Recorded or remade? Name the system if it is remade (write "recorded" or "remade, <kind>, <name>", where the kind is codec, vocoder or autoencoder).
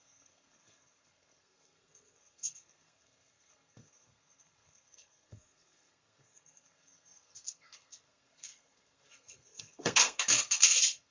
remade, codec, SNAC